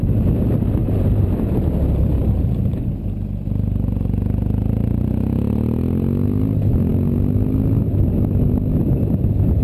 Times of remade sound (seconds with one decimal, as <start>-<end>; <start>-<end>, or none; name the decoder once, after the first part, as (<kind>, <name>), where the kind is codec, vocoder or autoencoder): 0.8-1.7 (vocoder, BigVGAN v2); 2.2-2.9